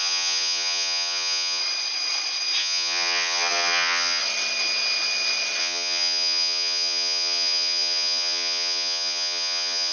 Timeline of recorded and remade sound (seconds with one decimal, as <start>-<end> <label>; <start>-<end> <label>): 0.0-1.6 remade; 1.6-2.6 recorded; 2.6-4.2 remade; 4.2-5.6 recorded; 5.6-9.9 remade